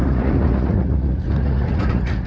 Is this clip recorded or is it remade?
remade